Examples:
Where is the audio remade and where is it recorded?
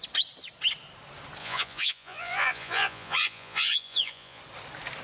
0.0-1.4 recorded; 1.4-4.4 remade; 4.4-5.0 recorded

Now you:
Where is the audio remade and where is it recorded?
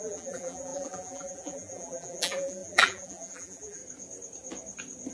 0.0-3.8 remade; 3.8-5.1 recorded